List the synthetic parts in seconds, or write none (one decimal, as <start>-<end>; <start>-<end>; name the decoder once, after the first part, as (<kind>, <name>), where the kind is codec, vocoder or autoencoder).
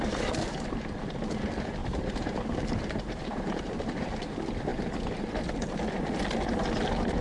1.8-4.3 (vocoder, BigVGAN v2)